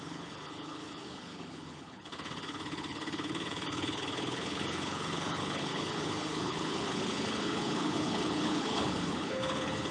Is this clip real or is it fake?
fake